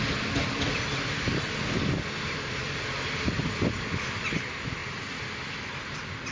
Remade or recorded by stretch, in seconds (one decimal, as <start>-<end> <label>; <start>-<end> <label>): 0.0-6.3 recorded

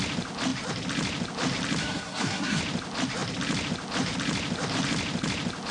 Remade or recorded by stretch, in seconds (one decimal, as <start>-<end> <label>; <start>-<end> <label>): 0.0-1.8 recorded; 1.8-2.6 remade; 2.6-5.7 recorded

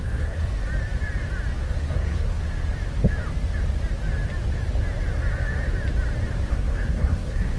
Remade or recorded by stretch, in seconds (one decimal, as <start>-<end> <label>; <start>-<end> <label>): 0.0-0.5 remade; 0.5-1.6 recorded; 1.6-2.4 remade; 2.4-6.5 recorded; 6.5-7.6 remade

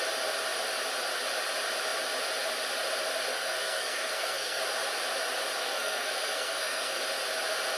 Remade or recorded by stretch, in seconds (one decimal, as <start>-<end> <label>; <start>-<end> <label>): 0.0-3.3 recorded; 3.3-4.6 remade; 4.6-5.6 recorded; 5.6-7.0 remade; 7.0-7.8 recorded

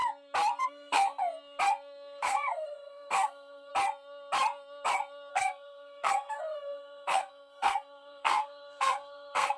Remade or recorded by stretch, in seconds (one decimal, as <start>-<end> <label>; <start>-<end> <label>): 0.0-0.6 recorded; 0.6-1.2 remade; 1.2-2.2 recorded; 2.2-3.7 remade; 3.7-5.3 recorded; 5.3-9.6 remade